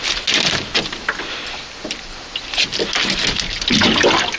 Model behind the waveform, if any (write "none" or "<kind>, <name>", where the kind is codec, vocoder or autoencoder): none